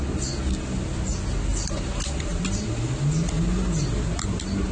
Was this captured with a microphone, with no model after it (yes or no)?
yes